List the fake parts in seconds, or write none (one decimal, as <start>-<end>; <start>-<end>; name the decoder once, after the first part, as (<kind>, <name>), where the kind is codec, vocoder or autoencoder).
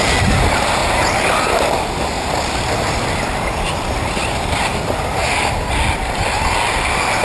0.0-0.8 (vocoder, BigVGAN v2); 3.7-5.2